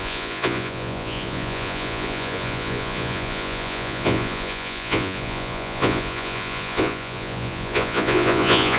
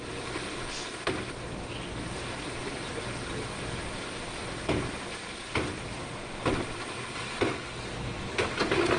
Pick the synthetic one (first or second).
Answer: first